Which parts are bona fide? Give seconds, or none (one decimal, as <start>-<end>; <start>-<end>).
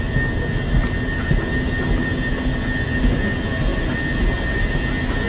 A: 0.0-5.3